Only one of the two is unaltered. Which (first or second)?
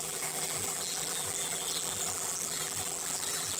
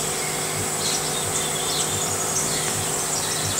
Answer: second